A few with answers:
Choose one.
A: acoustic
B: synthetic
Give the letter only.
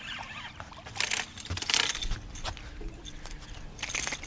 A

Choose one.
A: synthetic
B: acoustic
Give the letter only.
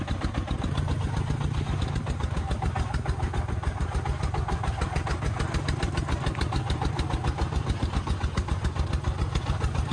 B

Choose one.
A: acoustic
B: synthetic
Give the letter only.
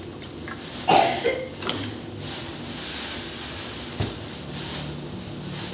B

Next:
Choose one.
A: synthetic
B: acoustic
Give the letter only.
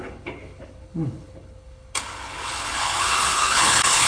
A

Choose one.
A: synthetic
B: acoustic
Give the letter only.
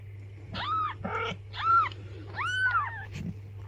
B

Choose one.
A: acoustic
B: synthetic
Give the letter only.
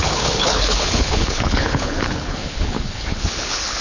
B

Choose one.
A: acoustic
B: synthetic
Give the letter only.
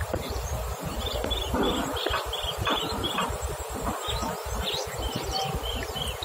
B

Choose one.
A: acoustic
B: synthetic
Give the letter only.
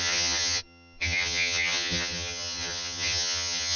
B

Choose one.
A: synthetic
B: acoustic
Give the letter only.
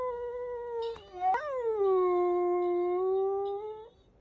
B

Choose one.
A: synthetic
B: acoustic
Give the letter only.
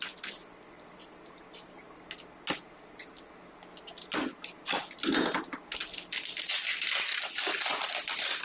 B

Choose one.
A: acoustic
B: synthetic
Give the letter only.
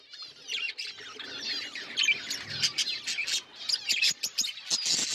A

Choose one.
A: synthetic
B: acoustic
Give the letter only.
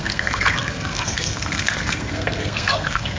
A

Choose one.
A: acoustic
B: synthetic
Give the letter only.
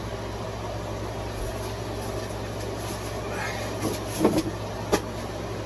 A